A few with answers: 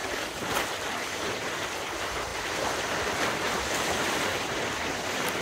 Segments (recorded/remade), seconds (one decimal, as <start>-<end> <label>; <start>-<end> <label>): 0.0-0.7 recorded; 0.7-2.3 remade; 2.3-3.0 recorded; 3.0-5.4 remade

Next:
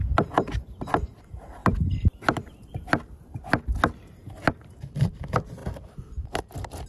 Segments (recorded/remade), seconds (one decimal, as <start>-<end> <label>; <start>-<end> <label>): 0.0-1.6 remade; 1.6-4.5 recorded; 4.5-6.9 remade

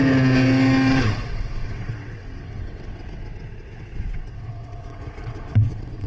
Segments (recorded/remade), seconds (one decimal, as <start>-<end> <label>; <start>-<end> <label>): 0.0-0.9 recorded; 0.9-6.1 remade

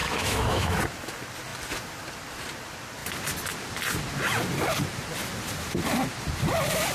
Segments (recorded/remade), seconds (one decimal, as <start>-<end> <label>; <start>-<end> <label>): 0.0-0.8 remade; 0.8-6.9 recorded

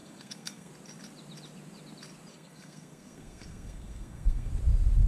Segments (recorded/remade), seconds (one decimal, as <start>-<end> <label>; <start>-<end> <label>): 0.0-0.7 remade; 0.7-2.3 recorded; 2.3-4.5 remade; 4.5-5.1 recorded

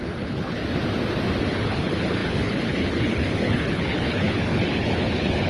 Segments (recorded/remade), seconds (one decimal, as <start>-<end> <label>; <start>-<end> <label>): 0.0-0.6 remade; 0.6-1.5 recorded; 1.5-5.5 remade

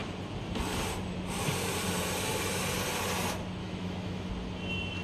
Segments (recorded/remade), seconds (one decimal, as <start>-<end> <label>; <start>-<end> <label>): 0.0-3.6 recorded; 3.6-4.3 remade; 4.3-5.0 recorded